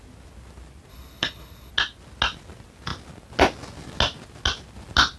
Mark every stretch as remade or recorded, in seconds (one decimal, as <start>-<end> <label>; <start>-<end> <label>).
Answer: 0.0-0.9 recorded; 0.9-1.7 remade; 1.7-5.2 recorded